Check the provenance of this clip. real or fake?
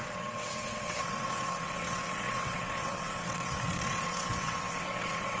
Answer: fake